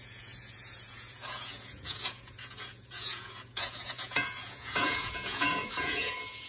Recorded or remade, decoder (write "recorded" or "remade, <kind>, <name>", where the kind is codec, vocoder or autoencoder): remade, vocoder, Vocos